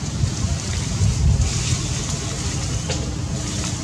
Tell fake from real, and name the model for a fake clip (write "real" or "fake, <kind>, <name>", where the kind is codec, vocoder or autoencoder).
real